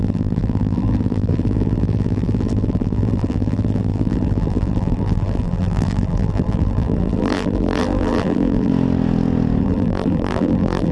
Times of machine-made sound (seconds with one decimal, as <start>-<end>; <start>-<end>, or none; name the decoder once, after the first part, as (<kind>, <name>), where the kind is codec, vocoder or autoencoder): 0.0-8.7 (vocoder, BigVGAN v2); 9.6-10.9